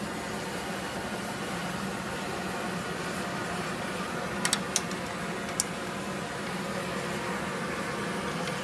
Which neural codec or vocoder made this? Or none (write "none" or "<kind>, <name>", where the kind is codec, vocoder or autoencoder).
none